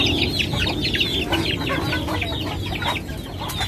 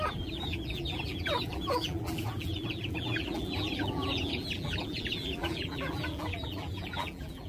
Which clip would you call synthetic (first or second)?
second